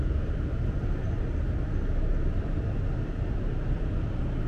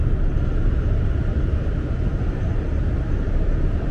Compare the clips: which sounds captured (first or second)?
first